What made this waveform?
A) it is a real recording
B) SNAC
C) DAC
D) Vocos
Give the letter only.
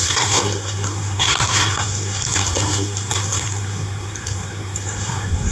B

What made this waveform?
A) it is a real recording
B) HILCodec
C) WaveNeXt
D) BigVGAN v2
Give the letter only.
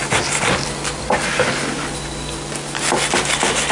D